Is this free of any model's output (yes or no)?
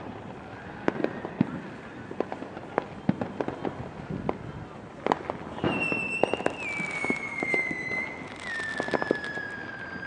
yes